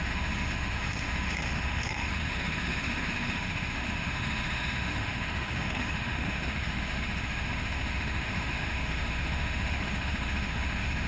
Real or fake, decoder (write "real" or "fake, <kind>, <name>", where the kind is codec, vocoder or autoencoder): fake, autoencoder, DAC-VAE